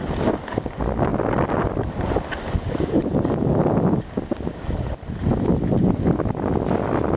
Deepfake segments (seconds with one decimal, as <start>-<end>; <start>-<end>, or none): none